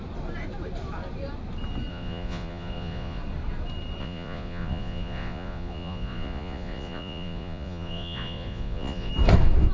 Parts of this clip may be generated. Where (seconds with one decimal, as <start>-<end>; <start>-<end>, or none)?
1.9-3.2; 4.0-9.1